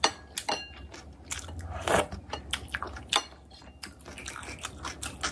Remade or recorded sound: recorded